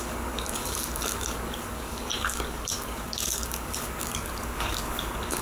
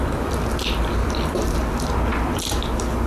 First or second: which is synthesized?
first